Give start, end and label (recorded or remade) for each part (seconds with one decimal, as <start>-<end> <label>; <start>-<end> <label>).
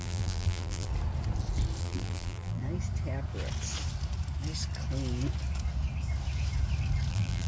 0.0-0.9 remade; 0.9-1.8 recorded; 1.8-2.6 remade; 2.6-7.1 recorded; 7.1-7.5 remade